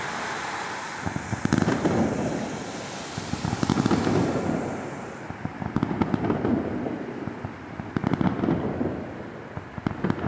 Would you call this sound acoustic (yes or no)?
yes